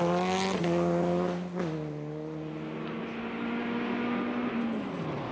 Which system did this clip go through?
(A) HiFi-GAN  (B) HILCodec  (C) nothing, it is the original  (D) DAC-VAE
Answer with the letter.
C